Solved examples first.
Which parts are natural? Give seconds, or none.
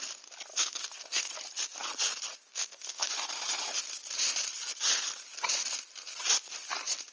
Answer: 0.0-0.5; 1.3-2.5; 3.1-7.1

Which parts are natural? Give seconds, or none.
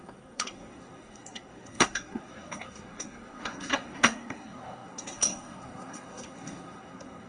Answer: none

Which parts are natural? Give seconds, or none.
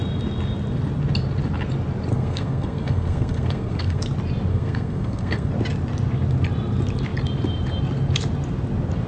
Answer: 0.0-2.1; 4.0-4.5; 5.5-9.1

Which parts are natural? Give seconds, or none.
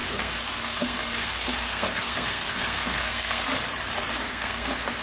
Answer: 3.5-4.1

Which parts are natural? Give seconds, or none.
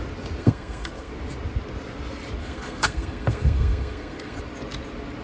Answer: 0.0-0.4; 1.1-2.4; 4.4-5.2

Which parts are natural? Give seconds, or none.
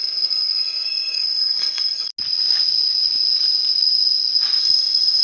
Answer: 2.1-4.6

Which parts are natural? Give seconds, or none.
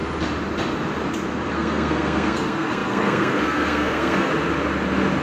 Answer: 0.0-1.5; 4.3-5.2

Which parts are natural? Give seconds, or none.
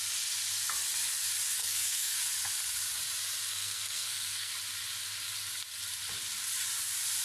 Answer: 0.0-1.6; 2.2-3.5; 4.5-7.2